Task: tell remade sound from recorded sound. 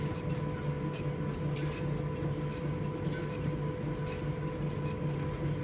recorded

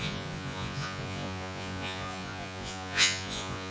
remade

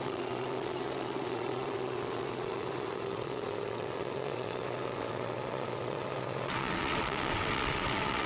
remade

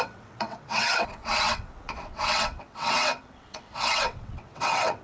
remade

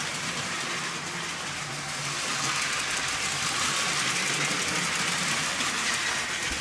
recorded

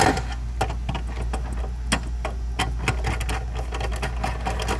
recorded